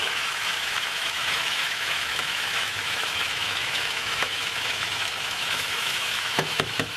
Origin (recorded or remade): remade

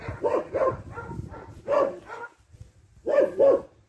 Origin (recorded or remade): recorded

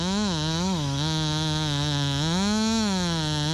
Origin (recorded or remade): remade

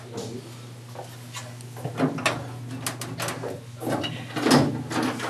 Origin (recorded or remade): recorded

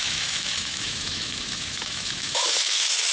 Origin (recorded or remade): remade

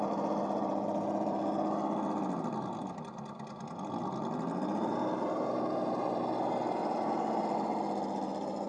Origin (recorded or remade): recorded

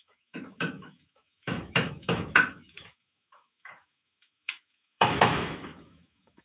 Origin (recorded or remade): remade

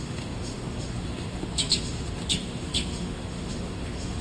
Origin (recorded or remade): remade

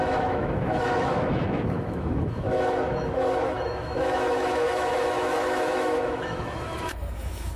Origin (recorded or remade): remade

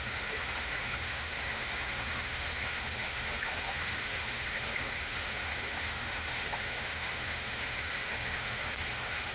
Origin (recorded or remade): remade